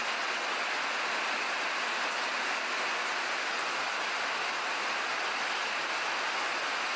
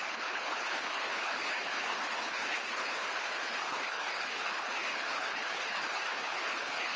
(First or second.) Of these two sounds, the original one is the first